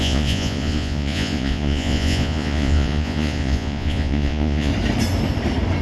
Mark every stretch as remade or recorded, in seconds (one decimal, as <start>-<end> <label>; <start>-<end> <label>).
0.0-4.7 remade; 4.7-5.8 recorded